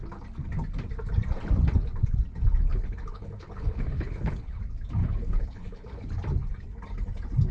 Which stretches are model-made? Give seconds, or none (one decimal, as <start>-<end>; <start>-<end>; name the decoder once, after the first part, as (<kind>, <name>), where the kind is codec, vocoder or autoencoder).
2.7-4.6 (codec, HILCodec); 5.0-6.0